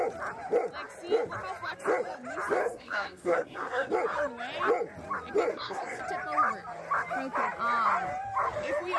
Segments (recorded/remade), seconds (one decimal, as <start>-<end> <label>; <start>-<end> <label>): 0.0-2.6 recorded; 2.6-3.9 remade; 3.9-5.5 recorded; 5.5-6.0 remade; 6.0-9.0 recorded